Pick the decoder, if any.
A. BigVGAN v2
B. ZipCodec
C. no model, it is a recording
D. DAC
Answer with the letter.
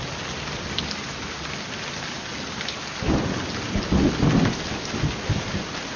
C